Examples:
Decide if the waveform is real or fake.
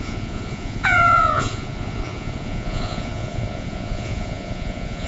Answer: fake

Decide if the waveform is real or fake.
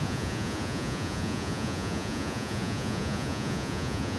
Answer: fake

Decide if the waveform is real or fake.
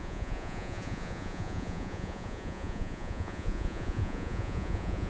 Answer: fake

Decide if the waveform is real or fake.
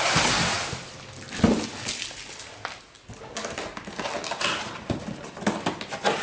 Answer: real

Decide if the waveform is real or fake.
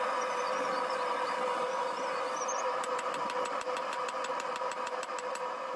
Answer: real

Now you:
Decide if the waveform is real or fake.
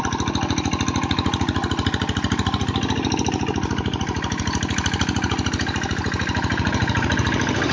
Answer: real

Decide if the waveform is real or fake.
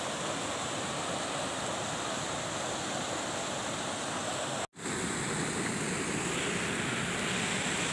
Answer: real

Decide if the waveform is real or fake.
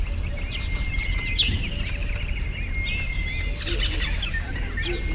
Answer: real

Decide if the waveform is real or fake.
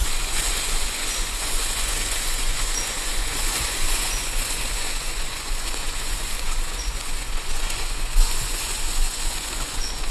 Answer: fake